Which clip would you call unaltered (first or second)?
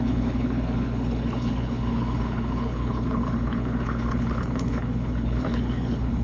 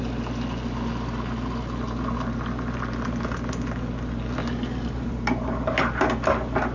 second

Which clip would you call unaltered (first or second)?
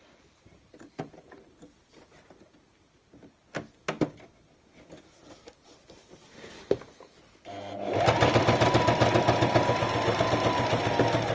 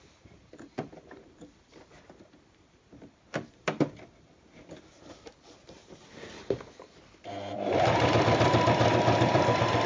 first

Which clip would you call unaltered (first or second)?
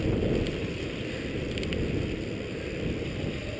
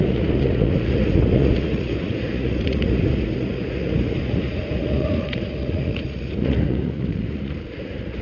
first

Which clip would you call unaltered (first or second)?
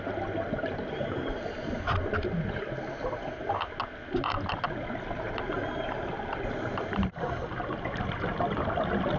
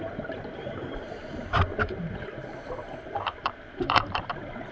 first